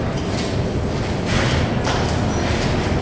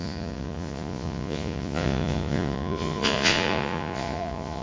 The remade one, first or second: second